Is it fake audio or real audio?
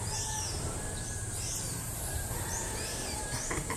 fake